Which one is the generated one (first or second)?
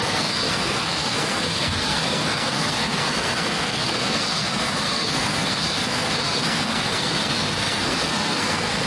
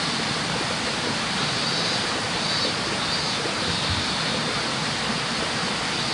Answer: first